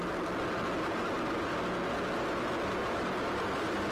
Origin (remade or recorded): recorded